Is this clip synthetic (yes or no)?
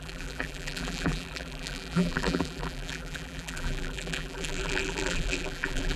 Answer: yes